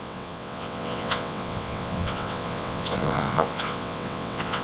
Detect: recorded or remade remade